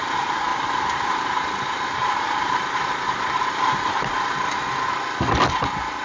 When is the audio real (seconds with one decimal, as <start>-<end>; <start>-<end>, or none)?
0.0-0.5; 4.1-6.0